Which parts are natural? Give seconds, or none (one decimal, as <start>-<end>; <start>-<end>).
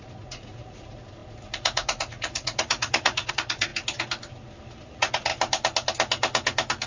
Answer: 3.7-4.8; 5.3-6.9